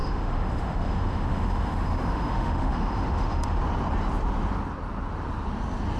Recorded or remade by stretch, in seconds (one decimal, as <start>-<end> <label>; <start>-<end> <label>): 0.0-3.6 remade; 3.6-6.0 recorded